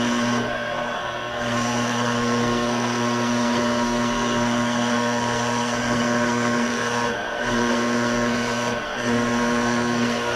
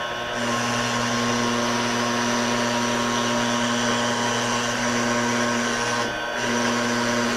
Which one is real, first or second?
second